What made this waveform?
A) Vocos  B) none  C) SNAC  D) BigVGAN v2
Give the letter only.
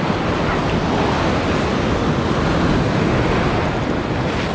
B